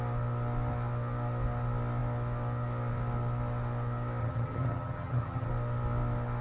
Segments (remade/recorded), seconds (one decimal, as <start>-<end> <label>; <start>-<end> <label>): 0.0-4.2 recorded; 4.2-5.5 remade; 5.5-6.4 recorded